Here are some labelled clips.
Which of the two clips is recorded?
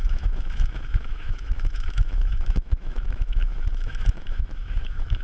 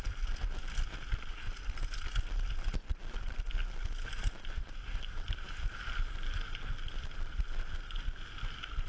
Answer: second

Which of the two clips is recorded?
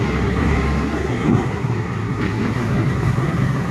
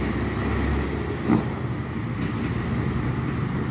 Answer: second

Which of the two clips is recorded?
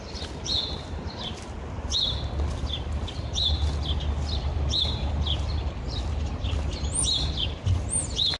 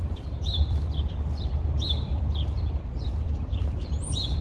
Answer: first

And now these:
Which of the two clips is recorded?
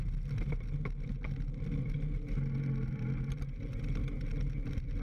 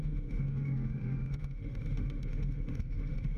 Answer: first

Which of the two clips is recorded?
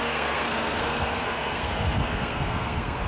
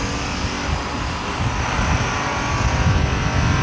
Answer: second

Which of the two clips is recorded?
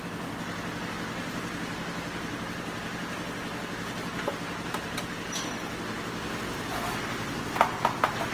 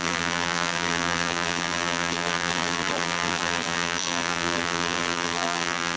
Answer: first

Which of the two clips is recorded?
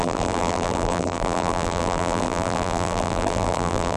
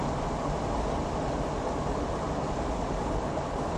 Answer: second